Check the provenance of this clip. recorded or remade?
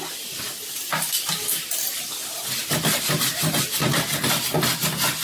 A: recorded